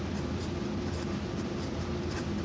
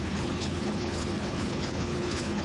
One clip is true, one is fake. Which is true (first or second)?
first